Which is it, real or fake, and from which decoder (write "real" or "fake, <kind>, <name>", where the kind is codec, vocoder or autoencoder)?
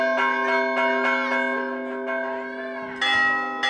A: real